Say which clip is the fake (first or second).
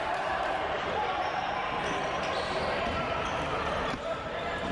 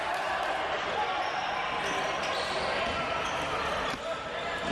first